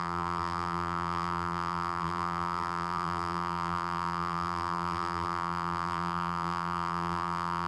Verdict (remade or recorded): remade